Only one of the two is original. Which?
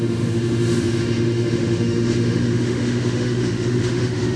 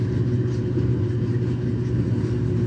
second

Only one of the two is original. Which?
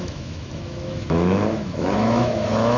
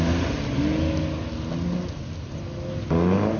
second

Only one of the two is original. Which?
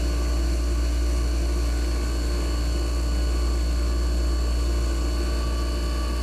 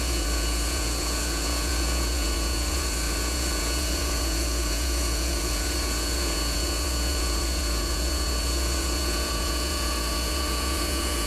first